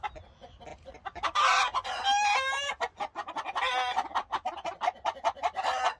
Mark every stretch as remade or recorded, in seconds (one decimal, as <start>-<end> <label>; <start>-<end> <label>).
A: 0.0-0.7 recorded; 0.7-2.0 remade; 2.0-6.0 recorded